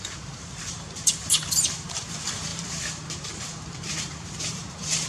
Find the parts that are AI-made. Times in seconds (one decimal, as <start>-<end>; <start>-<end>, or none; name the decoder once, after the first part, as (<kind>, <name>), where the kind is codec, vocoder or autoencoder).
0.0-5.1 (vocoder, BigVGAN v2)